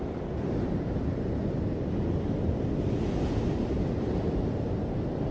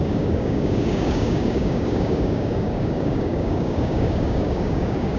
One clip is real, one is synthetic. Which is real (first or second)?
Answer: first